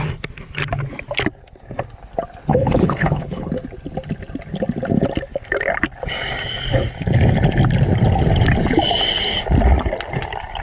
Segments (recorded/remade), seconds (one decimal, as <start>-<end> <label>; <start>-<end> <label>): 0.0-2.5 recorded; 2.5-3.5 remade; 3.5-10.6 recorded